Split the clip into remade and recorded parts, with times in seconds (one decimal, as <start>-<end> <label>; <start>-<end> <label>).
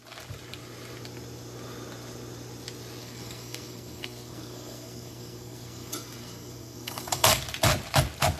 0.0-3.0 recorded; 3.0-7.4 remade; 7.4-8.4 recorded